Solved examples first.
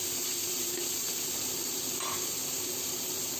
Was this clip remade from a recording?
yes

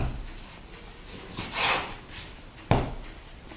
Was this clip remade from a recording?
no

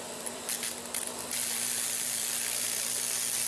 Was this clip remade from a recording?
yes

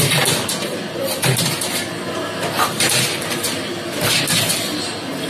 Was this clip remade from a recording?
no